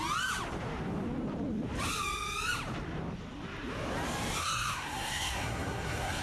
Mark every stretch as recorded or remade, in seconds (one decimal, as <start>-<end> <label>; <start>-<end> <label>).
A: 0.0-4.4 recorded; 4.4-6.2 remade